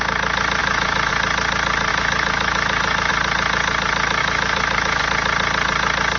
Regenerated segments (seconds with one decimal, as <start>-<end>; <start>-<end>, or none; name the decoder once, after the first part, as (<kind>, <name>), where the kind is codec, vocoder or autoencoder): 0.6-1.1 (autoencoder, DAC-VAE); 1.9-3.1; 4.2-5.0